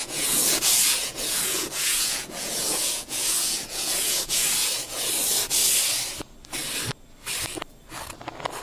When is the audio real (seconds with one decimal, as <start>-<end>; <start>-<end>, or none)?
5.1-8.6